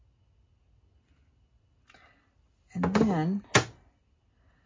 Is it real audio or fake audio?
real